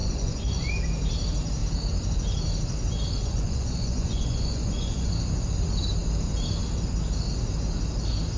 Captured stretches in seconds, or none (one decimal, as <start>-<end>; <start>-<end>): 0.7-3.2; 5.1-8.4

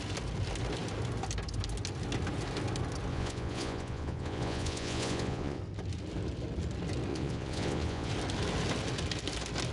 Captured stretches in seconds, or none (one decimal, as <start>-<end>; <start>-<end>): 0.0-3.1; 5.6-7.1; 8.1-9.7

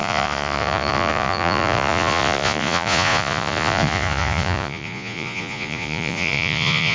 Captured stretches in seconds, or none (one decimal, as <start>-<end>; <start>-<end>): none